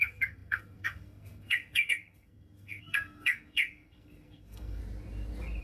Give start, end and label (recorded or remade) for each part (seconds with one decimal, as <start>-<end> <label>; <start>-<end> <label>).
0.0-4.8 remade; 4.8-5.6 recorded